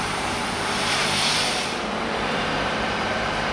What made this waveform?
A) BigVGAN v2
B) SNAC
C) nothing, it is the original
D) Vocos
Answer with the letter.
A